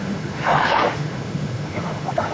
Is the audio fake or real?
fake